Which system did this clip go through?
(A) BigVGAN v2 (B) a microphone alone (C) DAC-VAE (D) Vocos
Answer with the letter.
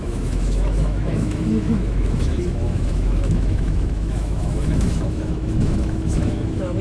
C